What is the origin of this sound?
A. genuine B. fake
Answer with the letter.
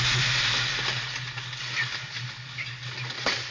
A